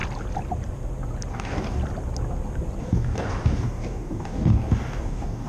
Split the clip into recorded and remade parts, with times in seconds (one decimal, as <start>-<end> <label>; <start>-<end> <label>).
0.0-1.3 recorded; 1.3-1.8 remade; 1.8-2.8 recorded; 2.8-5.5 remade